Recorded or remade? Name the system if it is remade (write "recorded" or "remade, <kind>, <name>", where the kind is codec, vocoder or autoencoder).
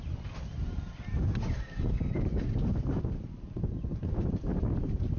recorded